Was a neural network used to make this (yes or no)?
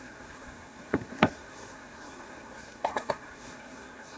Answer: yes